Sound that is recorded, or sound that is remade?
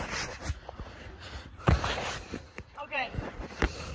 remade